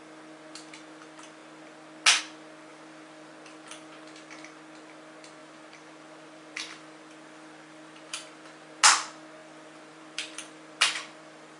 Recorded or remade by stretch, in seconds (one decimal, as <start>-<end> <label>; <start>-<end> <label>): 0.0-2.7 recorded; 2.7-3.3 remade; 3.3-5.4 recorded; 5.4-8.8 remade; 8.8-9.4 recorded; 9.4-11.6 remade